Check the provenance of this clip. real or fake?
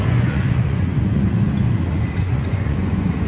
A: fake